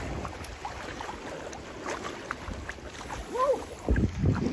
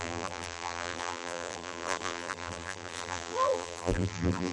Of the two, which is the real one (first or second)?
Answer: first